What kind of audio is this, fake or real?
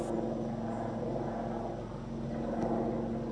real